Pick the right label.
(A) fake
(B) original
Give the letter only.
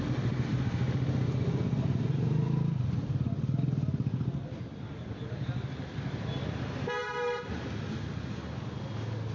B